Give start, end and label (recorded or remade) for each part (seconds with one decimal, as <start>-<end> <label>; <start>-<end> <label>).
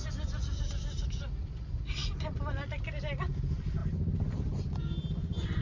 0.0-5.6 recorded